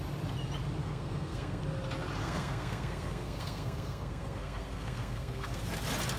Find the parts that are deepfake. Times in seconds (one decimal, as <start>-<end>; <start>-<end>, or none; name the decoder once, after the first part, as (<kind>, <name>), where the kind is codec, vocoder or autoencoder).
0.8-1.6 (codec, SNAC); 2.2-5.6